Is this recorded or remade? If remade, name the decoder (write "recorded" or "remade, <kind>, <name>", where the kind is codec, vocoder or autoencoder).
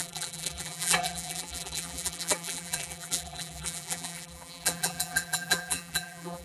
remade, vocoder, BigVGAN v2